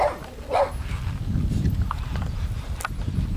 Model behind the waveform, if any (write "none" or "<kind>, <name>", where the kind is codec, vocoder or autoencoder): none